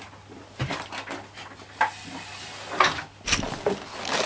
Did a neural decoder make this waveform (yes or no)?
no